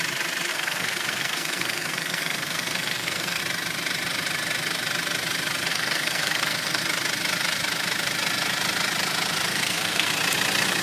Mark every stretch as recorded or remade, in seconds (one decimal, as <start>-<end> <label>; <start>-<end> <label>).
0.0-0.5 recorded; 0.5-3.4 remade; 3.4-5.7 recorded; 5.7-6.8 remade; 6.8-9.5 recorded; 9.5-10.1 remade; 10.1-10.8 recorded